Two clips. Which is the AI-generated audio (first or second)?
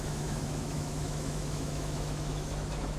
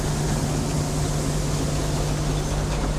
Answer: first